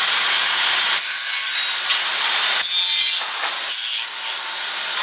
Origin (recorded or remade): recorded